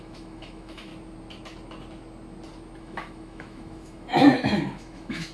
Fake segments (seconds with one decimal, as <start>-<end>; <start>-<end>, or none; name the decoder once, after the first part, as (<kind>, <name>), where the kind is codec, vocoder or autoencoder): 0.0-0.9 (autoencoder, DAC-VAE); 2.8-5.3